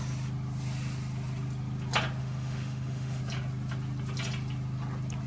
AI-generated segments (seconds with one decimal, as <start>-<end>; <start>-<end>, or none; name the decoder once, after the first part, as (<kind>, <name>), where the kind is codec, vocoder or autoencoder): 2.2-3.2 (autoencoder, DAC-VAE)

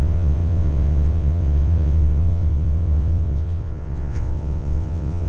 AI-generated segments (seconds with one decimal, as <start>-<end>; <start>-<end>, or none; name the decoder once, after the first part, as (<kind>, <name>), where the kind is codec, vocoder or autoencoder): 0.0-5.3 (vocoder, WaveNeXt)